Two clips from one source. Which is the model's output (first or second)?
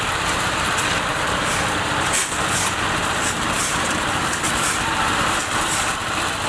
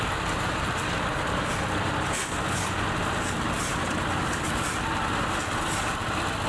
first